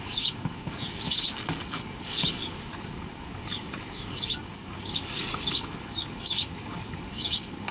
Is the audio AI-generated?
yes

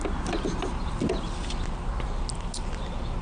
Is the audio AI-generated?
no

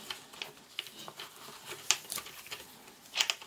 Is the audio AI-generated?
no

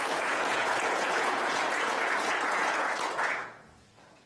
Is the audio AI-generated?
yes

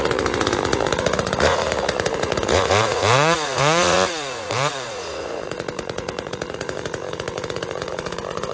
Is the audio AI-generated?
yes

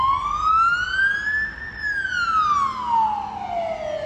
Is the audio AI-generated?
no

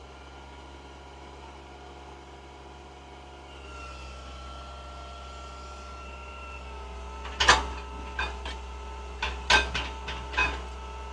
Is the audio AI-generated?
no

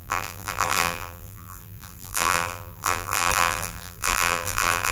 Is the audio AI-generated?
yes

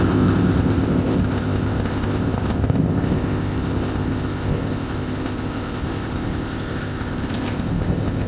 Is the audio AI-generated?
yes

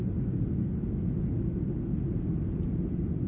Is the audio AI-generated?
no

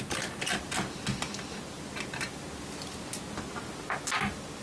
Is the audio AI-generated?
no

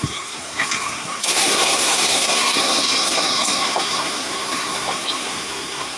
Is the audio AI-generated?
yes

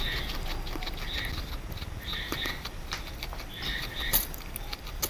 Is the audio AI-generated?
no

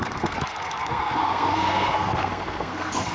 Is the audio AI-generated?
yes